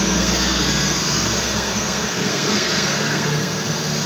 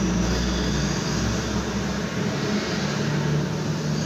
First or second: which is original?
second